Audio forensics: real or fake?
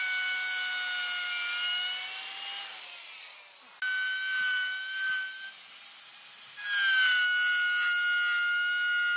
real